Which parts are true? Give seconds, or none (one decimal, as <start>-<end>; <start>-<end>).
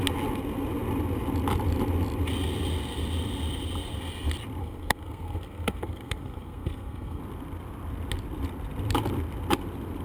0.0-4.6; 7.2-10.0